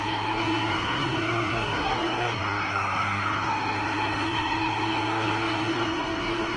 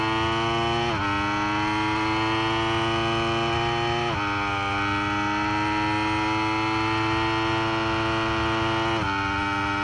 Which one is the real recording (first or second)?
second